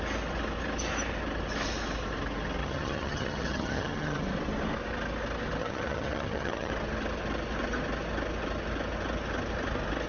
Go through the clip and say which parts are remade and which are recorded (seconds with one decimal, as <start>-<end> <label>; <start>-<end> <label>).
0.0-2.6 recorded; 2.6-4.2 remade; 4.2-5.6 recorded; 5.6-6.7 remade; 6.7-10.1 recorded